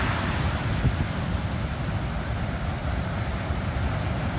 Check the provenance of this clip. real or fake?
real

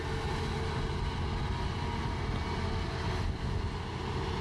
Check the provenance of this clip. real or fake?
real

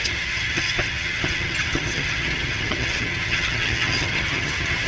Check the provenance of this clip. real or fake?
fake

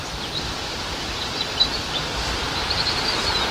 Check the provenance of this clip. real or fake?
real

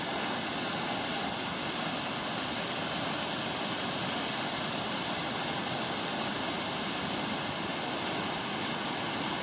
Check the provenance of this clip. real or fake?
real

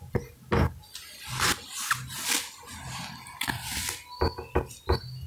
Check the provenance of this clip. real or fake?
real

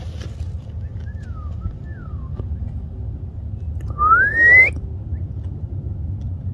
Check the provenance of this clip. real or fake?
real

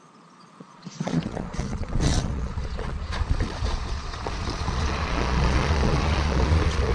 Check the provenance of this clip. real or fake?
fake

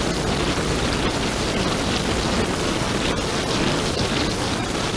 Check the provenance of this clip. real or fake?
real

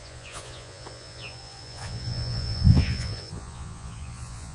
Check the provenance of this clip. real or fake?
fake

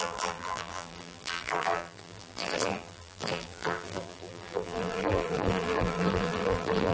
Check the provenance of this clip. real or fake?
fake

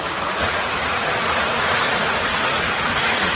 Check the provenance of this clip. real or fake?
fake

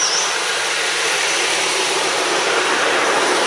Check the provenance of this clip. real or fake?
fake